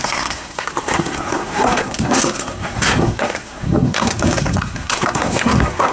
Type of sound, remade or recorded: remade